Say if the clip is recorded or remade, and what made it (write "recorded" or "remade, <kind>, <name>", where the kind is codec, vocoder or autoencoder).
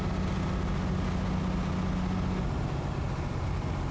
recorded